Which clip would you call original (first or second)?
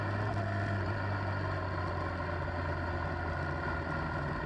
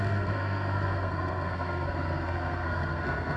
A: first